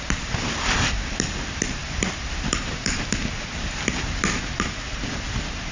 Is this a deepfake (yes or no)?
no